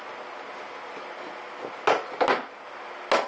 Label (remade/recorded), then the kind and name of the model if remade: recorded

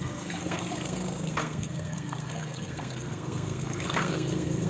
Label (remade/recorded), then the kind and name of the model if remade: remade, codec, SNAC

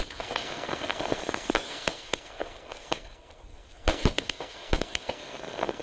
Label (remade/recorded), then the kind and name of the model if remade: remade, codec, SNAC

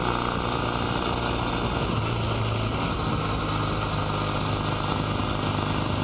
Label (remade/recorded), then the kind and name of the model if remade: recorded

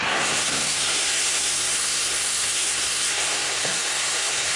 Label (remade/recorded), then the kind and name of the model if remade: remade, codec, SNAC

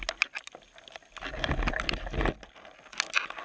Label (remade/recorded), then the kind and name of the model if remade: recorded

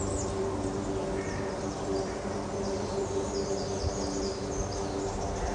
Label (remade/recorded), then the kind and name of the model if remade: recorded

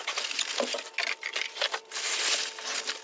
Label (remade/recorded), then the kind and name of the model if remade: recorded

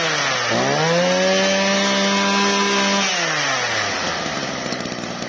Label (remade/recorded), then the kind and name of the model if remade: recorded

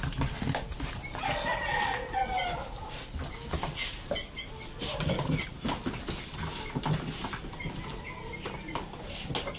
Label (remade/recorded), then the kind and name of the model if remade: recorded